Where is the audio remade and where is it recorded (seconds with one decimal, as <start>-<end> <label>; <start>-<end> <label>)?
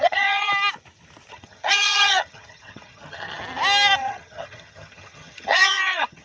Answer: 0.0-0.5 remade; 0.5-1.3 recorded; 1.3-3.4 remade; 3.4-4.0 recorded; 4.0-6.2 remade